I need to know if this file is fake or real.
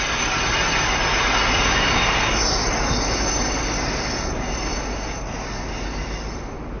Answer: real